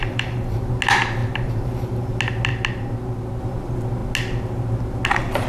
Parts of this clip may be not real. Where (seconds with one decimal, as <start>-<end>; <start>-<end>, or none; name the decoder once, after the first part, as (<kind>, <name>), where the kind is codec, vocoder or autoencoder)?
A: 0.0-0.7 (vocoder, BigVGAN v2); 1.2-2.1